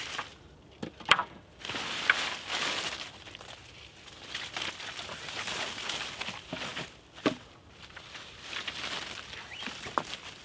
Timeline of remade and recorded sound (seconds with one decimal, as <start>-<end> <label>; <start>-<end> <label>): 0.0-10.4 recorded